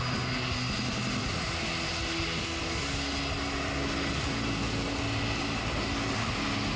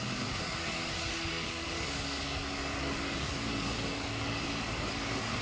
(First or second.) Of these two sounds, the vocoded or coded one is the second